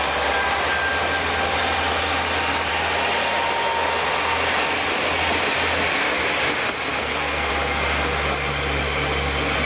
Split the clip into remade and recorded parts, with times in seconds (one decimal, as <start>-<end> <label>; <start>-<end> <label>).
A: 0.0-7.0 recorded; 7.0-7.5 remade; 7.5-9.7 recorded